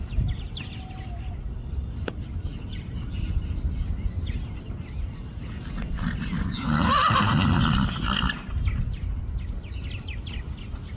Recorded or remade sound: recorded